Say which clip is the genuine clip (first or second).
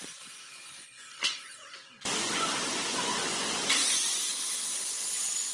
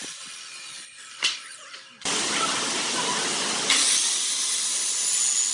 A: second